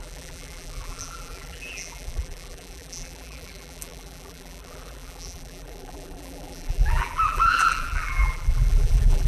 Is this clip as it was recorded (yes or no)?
no